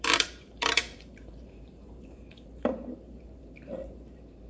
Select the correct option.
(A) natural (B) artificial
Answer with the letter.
B